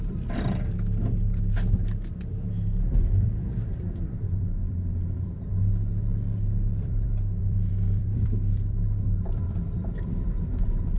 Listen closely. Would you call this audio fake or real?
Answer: fake